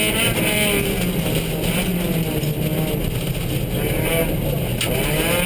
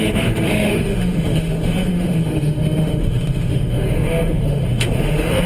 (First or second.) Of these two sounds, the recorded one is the first